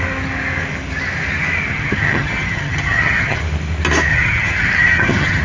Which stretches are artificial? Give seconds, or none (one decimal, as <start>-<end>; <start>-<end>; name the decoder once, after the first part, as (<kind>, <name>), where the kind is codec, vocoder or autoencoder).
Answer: 1.7-3.4 (vocoder, HiFi-GAN); 4.1-5.4